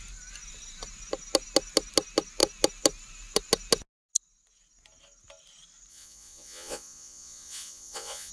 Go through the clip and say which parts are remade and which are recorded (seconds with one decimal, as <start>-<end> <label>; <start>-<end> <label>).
0.0-5.9 recorded; 5.9-8.3 remade